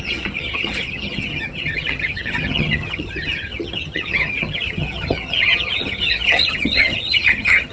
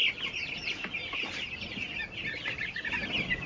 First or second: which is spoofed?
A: first